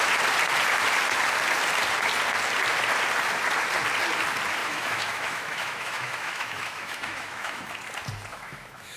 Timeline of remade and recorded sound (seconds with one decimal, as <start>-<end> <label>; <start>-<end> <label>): 0.0-4.6 recorded; 4.6-7.7 remade; 7.7-8.3 recorded; 8.3-9.0 remade